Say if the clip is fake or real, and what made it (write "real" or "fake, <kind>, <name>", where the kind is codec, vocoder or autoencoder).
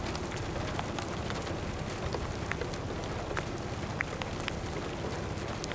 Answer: real